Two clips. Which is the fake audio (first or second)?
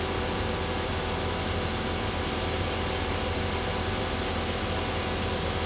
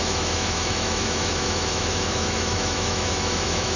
second